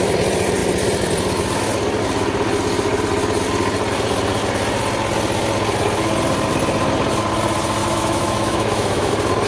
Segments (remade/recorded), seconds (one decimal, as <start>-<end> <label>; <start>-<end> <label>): 0.0-7.8 recorded; 7.8-9.1 remade; 9.1-9.5 recorded